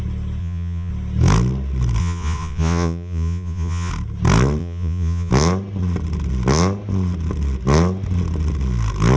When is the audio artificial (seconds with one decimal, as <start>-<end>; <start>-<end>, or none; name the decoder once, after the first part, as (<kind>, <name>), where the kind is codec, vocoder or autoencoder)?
0.4-0.9 (vocoder, Vocos); 2.0-3.9; 4.6-5.3